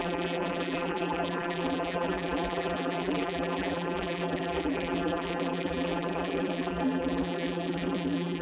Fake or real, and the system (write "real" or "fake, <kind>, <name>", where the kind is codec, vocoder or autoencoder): fake, vocoder, BigVGAN v2